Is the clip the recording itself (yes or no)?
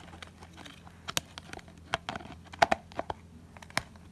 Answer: yes